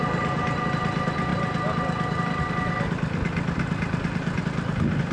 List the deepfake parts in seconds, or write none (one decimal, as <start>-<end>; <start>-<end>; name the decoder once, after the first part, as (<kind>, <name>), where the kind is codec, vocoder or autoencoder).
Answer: none